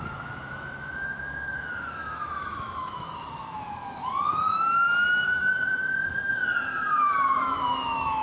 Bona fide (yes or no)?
no